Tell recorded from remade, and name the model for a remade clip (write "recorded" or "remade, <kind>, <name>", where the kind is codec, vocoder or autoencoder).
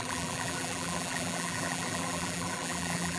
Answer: remade, vocoder, BigVGAN v2